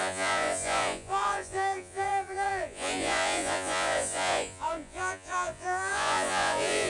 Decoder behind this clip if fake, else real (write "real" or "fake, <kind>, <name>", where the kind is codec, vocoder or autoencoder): fake, vocoder, Vocos